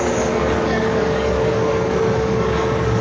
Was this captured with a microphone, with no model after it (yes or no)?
no